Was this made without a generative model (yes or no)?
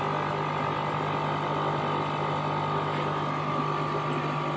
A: yes